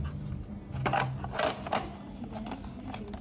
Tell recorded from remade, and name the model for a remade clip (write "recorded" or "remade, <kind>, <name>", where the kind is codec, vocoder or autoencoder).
recorded